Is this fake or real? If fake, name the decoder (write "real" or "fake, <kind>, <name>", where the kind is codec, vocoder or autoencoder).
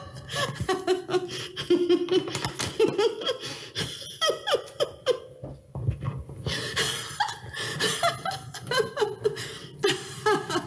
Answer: real